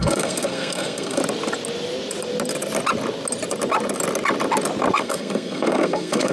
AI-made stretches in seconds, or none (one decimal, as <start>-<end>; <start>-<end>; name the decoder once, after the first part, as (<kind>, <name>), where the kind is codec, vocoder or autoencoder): 0.0-1.2 (codec, SNAC); 5.0-6.3